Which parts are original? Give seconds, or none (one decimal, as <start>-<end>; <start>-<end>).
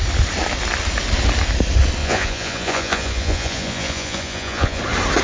0.0-2.0; 4.8-5.2